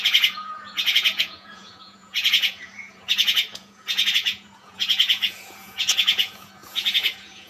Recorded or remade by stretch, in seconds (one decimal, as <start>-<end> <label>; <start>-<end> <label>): 0.0-7.5 remade